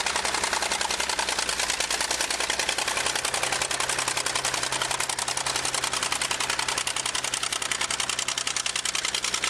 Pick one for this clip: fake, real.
real